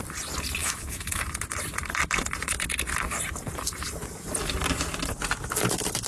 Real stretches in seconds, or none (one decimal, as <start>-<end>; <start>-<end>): 0.0-0.6; 1.2-6.1